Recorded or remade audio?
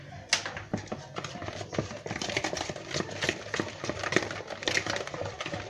recorded